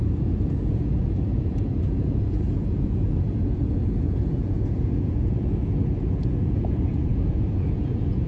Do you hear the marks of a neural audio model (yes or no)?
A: yes